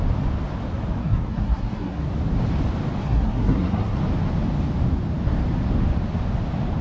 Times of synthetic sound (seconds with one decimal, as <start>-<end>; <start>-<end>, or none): 1.0-2.1; 3.0-4.0